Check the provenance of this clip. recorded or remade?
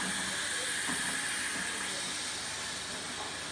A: recorded